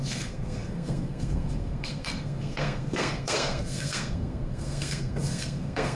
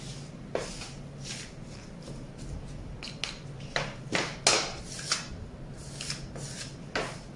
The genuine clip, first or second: second